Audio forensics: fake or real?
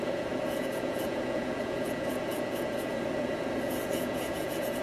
fake